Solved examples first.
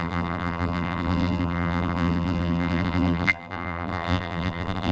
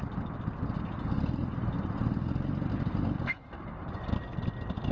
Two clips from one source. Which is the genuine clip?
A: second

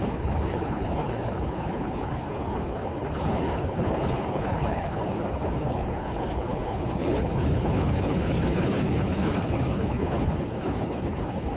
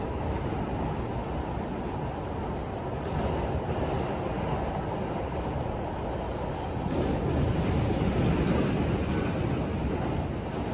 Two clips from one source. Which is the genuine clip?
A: second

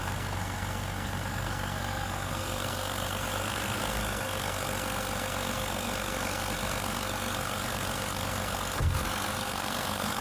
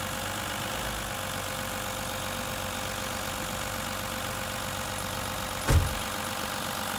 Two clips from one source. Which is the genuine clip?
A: second